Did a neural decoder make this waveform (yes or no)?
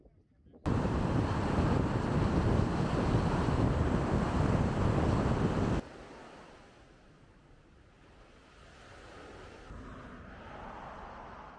no